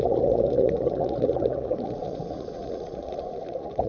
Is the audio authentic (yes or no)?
no